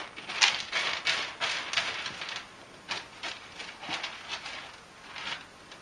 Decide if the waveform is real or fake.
real